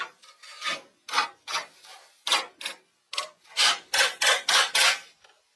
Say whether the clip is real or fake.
real